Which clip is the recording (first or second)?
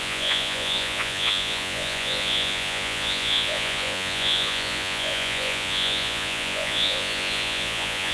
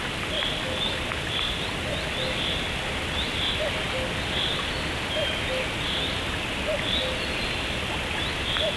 second